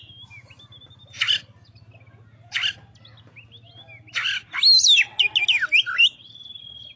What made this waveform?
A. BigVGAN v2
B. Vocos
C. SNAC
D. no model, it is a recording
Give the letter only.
D